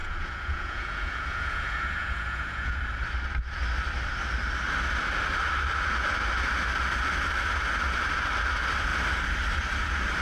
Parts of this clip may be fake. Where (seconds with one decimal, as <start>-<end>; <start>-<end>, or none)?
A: 0.0-2.8